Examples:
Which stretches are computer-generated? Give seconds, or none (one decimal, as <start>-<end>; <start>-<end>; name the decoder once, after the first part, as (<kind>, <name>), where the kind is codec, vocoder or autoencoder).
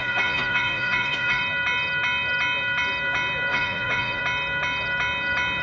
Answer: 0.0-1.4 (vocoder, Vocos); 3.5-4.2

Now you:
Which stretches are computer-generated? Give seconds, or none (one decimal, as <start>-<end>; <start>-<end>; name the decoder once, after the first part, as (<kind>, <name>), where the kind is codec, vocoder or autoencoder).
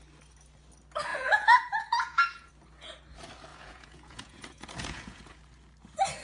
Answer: 1.1-2.5 (vocoder, Vocos); 3.5-5.4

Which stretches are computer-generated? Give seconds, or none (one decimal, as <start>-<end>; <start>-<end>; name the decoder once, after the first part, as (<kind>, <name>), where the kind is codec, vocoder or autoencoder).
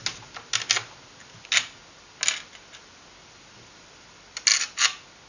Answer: none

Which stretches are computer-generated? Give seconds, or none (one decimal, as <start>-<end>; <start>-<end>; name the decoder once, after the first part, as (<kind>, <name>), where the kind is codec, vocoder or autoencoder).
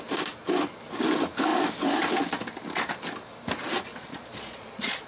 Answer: 3.9-5.1 (vocoder, Vocos)